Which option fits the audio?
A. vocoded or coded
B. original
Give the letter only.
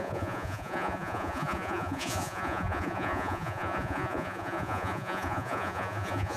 A